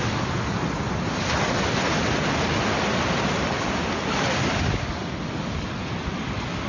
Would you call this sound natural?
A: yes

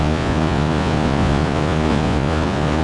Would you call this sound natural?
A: no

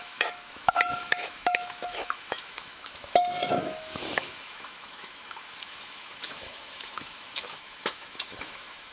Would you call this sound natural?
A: no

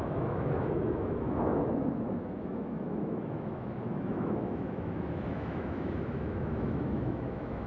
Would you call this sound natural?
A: no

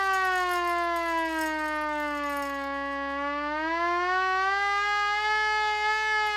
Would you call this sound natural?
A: yes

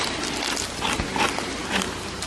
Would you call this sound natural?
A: yes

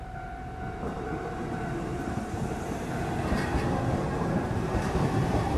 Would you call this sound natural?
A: no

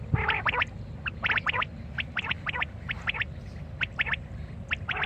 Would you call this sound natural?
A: yes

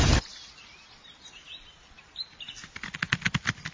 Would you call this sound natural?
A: yes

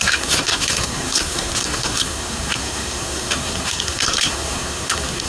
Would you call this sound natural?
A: no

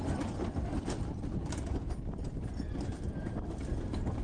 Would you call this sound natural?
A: no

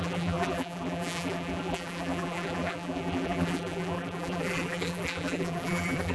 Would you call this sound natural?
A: no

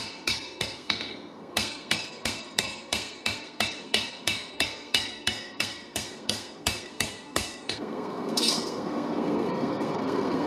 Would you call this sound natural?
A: no